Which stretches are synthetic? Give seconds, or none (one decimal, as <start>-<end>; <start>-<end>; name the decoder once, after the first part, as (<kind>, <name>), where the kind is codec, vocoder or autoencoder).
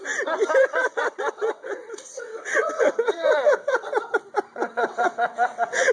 0.6-3.9 (vocoder, WaveNeXt); 4.6-5.9